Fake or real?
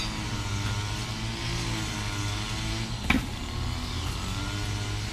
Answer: real